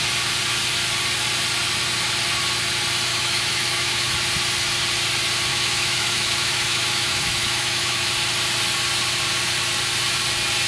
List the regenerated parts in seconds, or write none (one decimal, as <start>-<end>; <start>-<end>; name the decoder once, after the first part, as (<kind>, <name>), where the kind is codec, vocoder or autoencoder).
3.1-4.1 (autoencoder, DAC-VAE); 5.5-8.1